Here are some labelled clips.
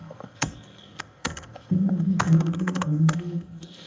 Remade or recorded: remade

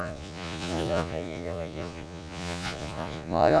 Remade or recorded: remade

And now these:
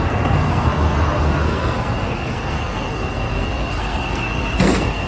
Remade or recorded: remade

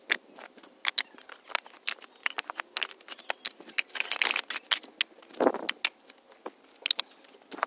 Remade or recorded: recorded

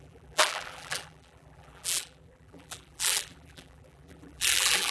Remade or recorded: remade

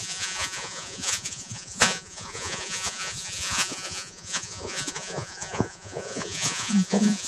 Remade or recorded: remade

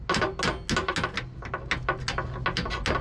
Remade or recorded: recorded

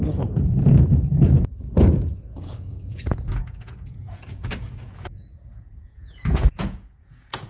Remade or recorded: remade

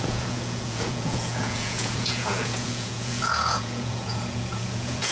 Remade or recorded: remade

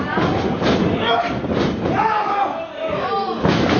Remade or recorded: recorded